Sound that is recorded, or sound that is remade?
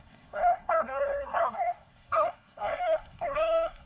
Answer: remade